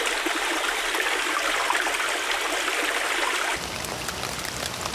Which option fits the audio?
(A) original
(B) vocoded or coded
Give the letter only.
A